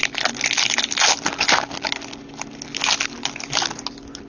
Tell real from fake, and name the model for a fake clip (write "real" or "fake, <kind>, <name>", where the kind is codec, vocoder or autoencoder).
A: real